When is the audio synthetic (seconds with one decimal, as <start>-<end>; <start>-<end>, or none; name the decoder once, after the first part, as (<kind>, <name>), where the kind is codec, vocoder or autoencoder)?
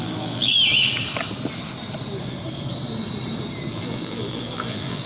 0.0-0.6 (vocoder, BigVGAN v2); 3.7-5.1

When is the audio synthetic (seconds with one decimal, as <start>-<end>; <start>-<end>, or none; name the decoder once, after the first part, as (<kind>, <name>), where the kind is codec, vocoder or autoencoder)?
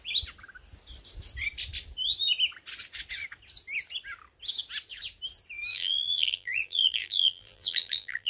5.7-8.3 (vocoder, BigVGAN v2)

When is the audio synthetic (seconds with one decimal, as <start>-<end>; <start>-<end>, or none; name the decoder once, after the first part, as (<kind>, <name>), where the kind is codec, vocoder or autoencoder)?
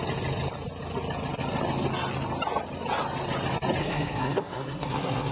3.8-5.3 (codec, SNAC)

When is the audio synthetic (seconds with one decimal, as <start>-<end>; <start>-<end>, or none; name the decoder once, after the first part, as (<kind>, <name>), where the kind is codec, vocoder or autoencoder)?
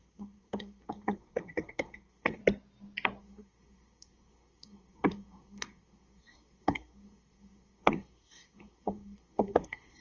0.0-2.4 (codec, SNAC); 3.2-10.0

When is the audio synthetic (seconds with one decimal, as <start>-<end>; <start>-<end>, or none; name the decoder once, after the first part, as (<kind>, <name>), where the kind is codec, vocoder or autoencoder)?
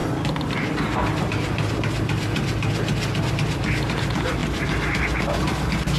none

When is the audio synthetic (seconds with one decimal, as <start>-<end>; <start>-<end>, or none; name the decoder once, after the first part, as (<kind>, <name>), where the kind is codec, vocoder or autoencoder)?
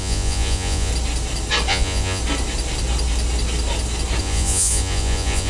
0.0-0.9 (vocoder, Vocos); 1.7-2.2; 4.2-5.5